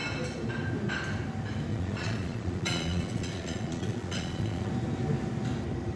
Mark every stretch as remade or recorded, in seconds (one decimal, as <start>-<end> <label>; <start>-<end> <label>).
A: 0.0-1.7 recorded; 1.7-4.7 remade; 4.7-6.0 recorded